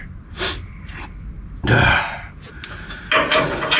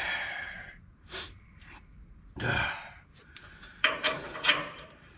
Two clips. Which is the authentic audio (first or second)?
first